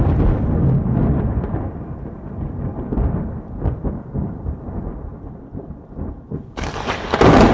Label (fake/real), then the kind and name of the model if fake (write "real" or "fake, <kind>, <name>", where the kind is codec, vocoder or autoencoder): real